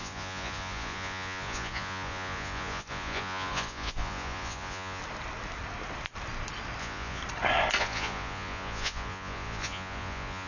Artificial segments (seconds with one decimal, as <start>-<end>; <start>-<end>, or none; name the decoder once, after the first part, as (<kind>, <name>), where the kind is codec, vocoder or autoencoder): 0.0-5.0 (vocoder, Vocos); 6.8-7.2; 7.8-10.5